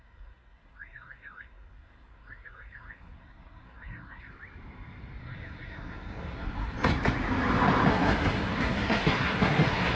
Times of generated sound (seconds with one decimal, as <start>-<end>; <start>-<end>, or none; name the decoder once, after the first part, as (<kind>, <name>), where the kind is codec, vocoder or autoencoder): 0.0-4.3 (codec, SNAC); 5.2-6.9; 7.9-9.9